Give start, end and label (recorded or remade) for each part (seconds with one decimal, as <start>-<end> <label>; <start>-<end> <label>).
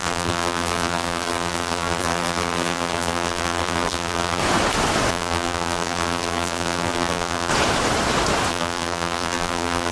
0.0-4.4 remade; 4.4-5.1 recorded; 5.1-7.5 remade; 7.5-8.5 recorded; 8.5-9.9 remade